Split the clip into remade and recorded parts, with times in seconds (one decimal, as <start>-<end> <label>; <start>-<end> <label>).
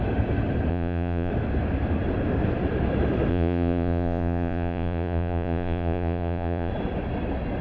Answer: 0.0-0.7 recorded; 0.7-1.3 remade; 1.3-3.3 recorded; 3.3-6.7 remade; 6.7-7.6 recorded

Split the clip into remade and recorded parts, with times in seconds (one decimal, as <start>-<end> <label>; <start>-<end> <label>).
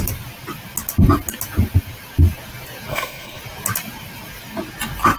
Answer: 0.0-2.9 recorded; 2.9-3.4 remade; 3.4-5.2 recorded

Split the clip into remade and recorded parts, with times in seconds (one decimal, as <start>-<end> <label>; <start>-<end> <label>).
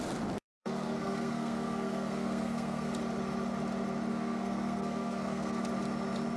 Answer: 0.0-0.4 recorded; 0.4-2.9 remade; 2.9-4.1 recorded; 4.1-5.6 remade; 5.6-6.4 recorded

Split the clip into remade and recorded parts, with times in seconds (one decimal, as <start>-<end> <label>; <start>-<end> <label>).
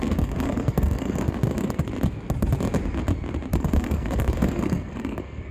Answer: 0.0-1.8 remade; 1.8-3.5 recorded; 3.5-5.5 remade